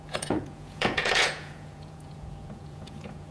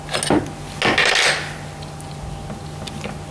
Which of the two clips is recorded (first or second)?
second